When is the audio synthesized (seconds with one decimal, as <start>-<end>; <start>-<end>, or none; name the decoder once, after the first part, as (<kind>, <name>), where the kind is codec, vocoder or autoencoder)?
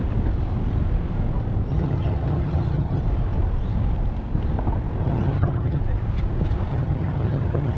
1.7-3.0 (vocoder, HiFi-GAN); 5.0-5.8; 6.7-7.8